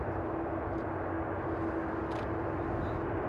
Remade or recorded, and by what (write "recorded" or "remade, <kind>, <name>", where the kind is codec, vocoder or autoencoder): recorded